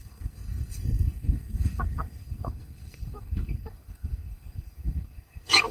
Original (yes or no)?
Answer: no